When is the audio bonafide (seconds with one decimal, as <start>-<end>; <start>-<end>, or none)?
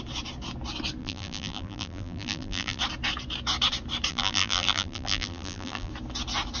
0.0-1.0; 2.8-4.1; 5.9-6.6